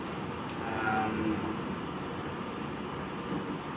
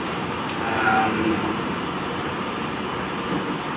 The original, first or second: first